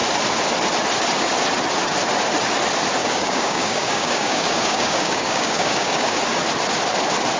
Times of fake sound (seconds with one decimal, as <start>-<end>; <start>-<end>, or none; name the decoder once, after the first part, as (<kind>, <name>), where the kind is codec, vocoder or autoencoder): 3.0-6.2 (codec, DAC)